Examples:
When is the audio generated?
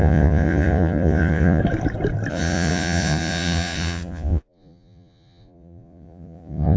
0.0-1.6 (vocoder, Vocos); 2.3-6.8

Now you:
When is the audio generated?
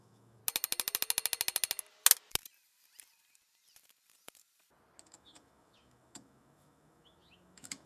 0.0-0.4 (autoencoder, DAC-VAE); 5.0-7.9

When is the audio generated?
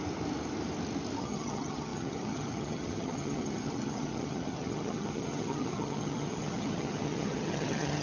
1.2-8.0 (vocoder, HiFi-GAN)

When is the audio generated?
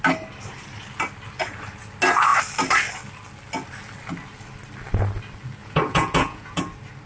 5.6-6.6 (vocoder, Vocos)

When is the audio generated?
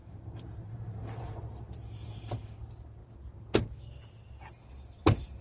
0.0-3.0 (vocoder, BigVGAN v2); 4.7-5.4